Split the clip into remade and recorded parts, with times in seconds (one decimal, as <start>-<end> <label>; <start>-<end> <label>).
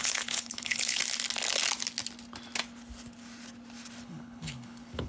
0.0-1.0 remade; 1.0-4.0 recorded; 4.0-5.1 remade